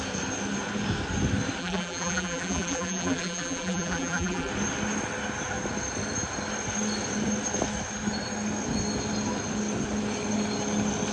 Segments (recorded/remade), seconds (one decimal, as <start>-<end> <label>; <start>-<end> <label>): 0.0-1.6 recorded; 1.6-4.5 remade; 4.5-11.1 recorded